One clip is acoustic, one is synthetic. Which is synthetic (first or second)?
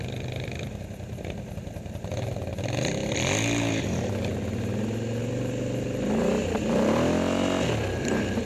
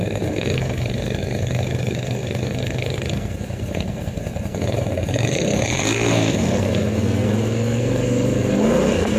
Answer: second